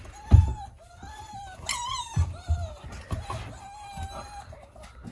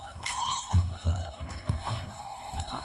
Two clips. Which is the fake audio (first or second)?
second